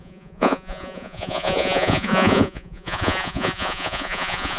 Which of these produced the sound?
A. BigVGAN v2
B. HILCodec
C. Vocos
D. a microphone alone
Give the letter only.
C